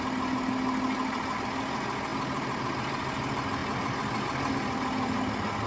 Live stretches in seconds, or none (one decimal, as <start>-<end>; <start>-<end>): 0.0-5.7